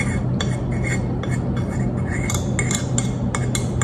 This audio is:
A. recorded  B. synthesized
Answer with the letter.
A